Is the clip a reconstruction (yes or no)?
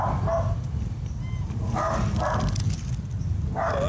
no